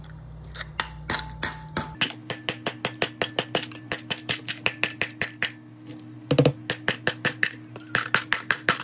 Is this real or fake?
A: real